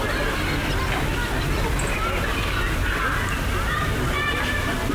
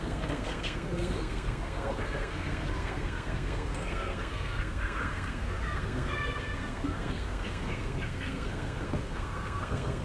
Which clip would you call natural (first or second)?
first